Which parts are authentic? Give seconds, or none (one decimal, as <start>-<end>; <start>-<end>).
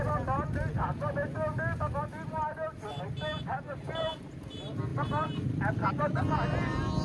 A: 0.0-7.0